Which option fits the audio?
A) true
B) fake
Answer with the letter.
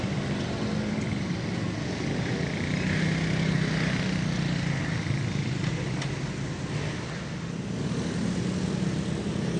A